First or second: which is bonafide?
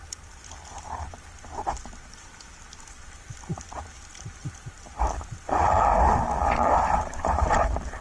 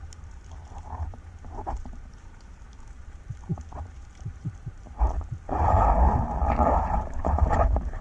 first